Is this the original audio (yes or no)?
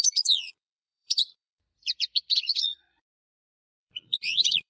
no